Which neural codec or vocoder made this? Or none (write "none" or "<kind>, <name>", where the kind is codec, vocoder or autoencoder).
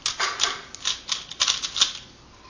none